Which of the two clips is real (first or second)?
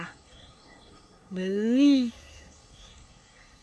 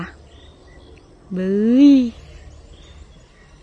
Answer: second